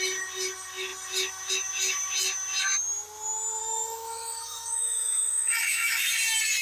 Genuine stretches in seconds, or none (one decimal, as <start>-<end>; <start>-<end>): 0.0-3.6; 6.1-6.6